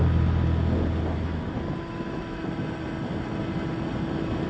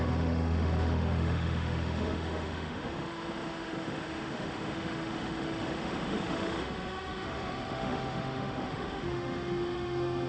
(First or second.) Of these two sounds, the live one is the first